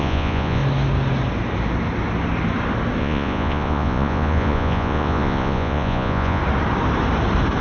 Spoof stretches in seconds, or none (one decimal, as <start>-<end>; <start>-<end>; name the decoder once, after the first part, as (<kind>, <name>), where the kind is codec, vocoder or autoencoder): 0.0-0.6 (vocoder, Vocos); 3.0-6.4